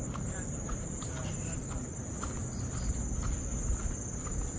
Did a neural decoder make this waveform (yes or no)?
no